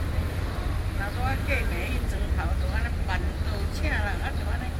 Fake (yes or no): no